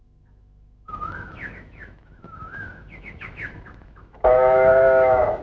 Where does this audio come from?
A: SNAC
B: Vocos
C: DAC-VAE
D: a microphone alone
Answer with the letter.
C